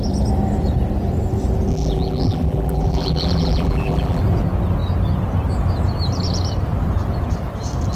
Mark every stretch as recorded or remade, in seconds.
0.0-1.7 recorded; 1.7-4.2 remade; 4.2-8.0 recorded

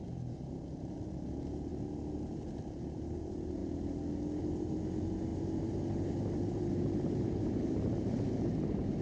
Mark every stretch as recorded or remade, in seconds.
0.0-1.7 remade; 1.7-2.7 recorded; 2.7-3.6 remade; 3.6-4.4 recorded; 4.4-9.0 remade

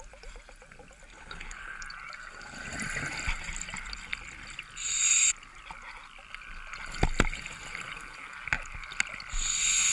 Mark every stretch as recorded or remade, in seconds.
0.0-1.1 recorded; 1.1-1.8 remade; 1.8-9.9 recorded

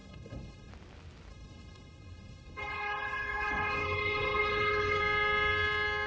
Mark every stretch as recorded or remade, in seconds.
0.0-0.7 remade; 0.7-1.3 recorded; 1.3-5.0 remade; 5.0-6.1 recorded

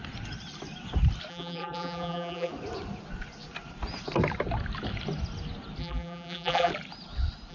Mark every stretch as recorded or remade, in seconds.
0.0-1.3 recorded; 1.3-2.5 remade; 2.5-5.8 recorded; 5.8-6.7 remade; 6.7-7.5 recorded

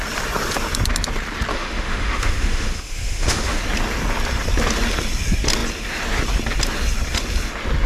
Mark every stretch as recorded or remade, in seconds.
0.0-1.5 recorded; 1.5-3.6 remade; 3.6-7.9 recorded

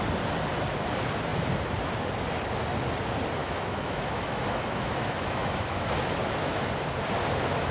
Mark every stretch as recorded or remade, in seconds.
0.0-3.4 recorded; 3.4-5.9 remade; 5.9-7.7 recorded

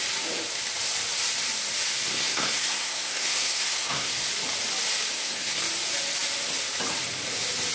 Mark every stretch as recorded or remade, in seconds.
0.0-2.1 recorded; 2.1-4.3 remade; 4.3-5.1 recorded; 5.1-5.6 remade; 5.6-7.7 recorded